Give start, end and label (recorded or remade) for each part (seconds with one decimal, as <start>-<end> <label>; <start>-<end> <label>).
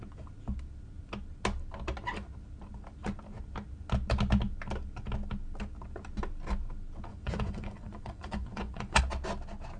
0.0-7.1 recorded; 7.1-9.0 remade; 9.0-9.8 recorded